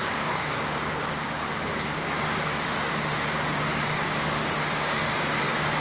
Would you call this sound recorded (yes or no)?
no